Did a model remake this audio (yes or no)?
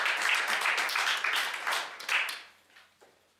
no